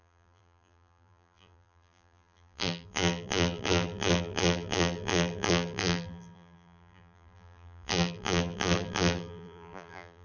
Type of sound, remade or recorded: remade